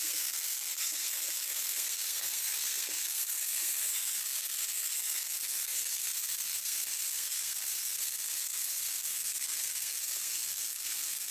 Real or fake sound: fake